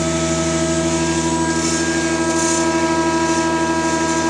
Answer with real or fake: real